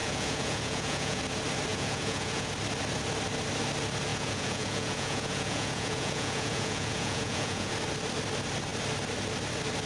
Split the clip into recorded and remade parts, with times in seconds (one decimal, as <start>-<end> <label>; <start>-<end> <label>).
0.0-1.2 remade; 1.2-1.7 recorded; 1.7-2.5 remade; 2.5-4.1 recorded; 4.1-7.7 remade; 7.7-9.9 recorded